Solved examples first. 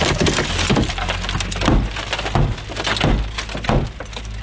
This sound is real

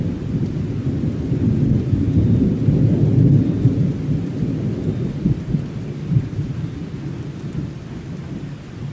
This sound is real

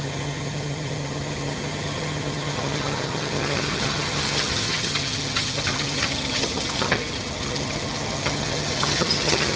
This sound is fake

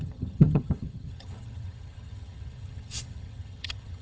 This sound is fake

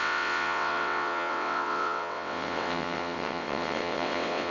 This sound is fake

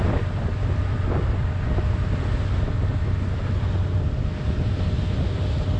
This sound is real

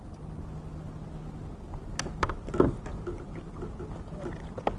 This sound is real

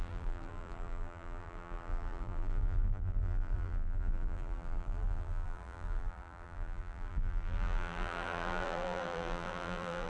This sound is fake